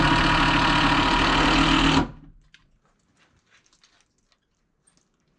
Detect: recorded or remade recorded